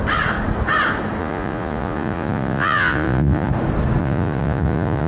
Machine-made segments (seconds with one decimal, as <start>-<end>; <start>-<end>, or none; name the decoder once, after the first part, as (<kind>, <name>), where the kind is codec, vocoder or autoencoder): 1.2-3.5 (vocoder, Vocos); 4.0-5.1